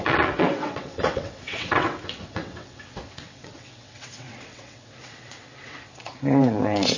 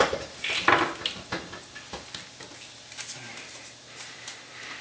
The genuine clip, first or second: second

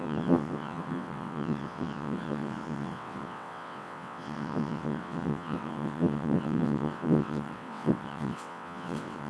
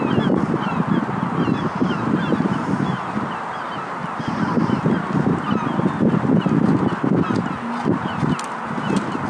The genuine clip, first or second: second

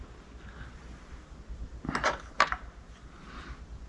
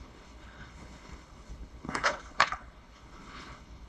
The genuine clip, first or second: first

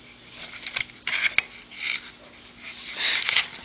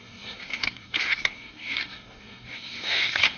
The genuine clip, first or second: first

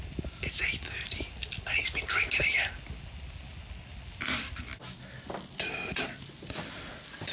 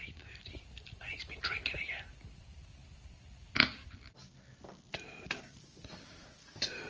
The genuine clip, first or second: first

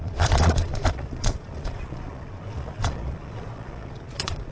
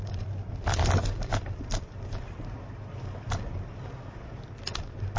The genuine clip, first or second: second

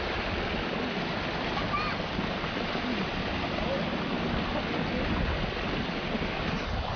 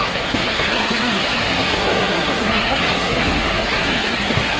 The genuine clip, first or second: first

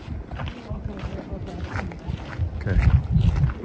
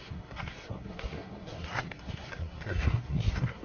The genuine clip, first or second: first